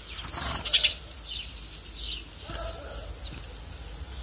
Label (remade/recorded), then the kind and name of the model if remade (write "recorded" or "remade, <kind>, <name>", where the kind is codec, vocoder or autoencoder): recorded